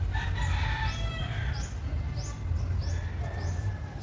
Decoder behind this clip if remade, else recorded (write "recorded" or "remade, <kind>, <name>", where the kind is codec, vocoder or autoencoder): recorded